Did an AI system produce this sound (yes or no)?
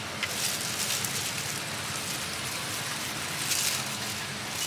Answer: no